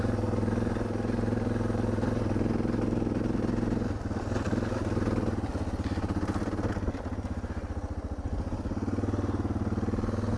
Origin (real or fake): real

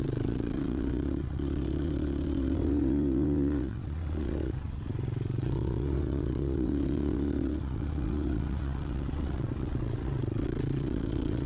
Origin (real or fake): fake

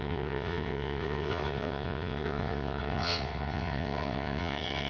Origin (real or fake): fake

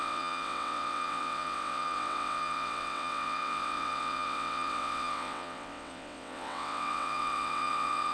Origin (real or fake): fake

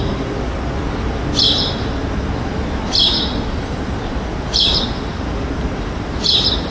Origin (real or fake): real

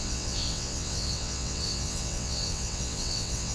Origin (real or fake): fake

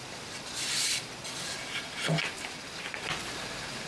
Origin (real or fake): real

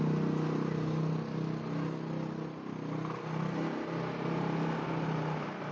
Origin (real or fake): real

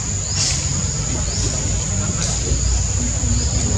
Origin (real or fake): real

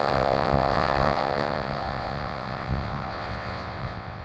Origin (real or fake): fake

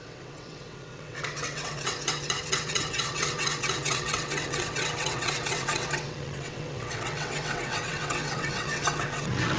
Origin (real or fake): fake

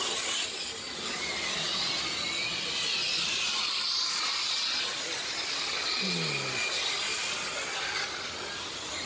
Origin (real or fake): real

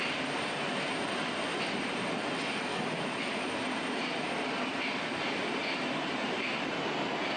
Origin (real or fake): real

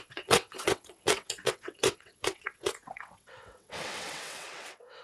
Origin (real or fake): fake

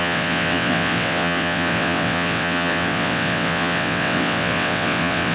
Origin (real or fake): fake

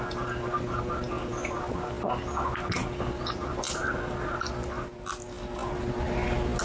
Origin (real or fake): real